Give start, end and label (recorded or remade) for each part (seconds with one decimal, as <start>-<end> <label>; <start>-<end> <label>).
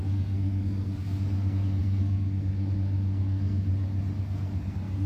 0.0-3.7 remade; 3.7-4.2 recorded; 4.2-5.1 remade